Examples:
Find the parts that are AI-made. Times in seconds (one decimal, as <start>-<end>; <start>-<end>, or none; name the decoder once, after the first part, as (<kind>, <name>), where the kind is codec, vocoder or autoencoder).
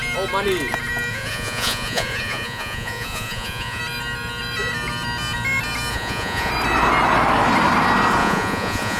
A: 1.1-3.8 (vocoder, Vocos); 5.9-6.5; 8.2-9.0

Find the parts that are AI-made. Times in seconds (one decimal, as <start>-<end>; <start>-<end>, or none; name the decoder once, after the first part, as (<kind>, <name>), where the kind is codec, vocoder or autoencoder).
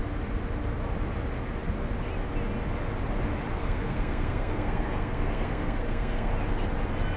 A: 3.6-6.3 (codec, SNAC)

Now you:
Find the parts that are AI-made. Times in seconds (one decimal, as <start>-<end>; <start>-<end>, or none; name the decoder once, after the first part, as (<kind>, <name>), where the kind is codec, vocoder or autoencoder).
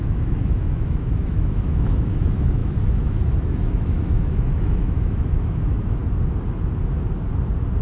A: 0.0-6.0 (autoencoder, DAC-VAE)